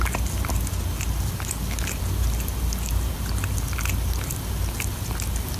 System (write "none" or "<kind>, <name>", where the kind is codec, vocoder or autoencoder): none